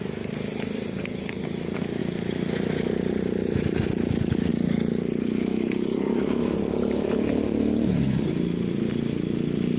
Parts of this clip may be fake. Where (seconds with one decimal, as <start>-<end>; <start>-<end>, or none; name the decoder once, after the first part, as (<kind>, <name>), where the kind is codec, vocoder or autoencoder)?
none